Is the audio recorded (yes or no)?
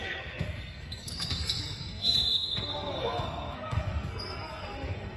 no